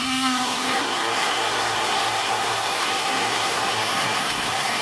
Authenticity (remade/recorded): remade